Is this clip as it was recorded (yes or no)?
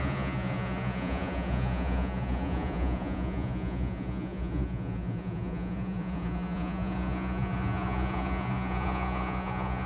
no